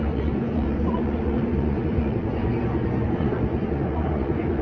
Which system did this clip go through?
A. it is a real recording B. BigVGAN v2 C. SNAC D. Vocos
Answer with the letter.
D